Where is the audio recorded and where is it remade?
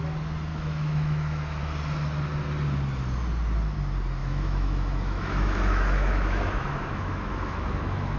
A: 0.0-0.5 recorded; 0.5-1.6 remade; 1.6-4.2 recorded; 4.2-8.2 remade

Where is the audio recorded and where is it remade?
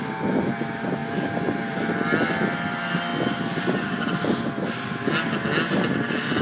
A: 0.0-6.4 recorded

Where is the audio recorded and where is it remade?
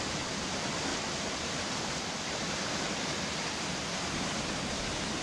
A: 0.0-5.2 recorded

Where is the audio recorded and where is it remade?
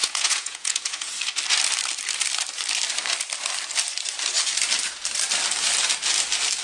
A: 0.0-1.1 remade; 1.1-6.6 recorded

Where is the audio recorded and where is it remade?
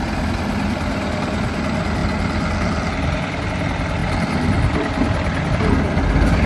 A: 0.0-6.5 recorded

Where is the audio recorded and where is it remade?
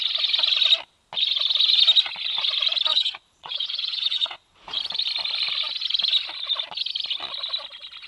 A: 0.0-2.9 recorded; 2.9-4.8 remade; 4.8-8.1 recorded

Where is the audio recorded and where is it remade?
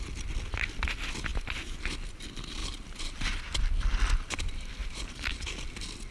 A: 0.0-1.3 recorded; 1.3-1.8 remade; 1.8-2.6 recorded; 2.6-3.4 remade; 3.4-4.8 recorded; 4.8-5.6 remade; 5.6-6.1 recorded